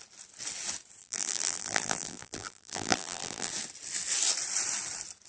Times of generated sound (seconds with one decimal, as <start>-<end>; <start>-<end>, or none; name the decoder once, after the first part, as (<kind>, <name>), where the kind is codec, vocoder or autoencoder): 1.0-3.5 (vocoder, BigVGAN v2)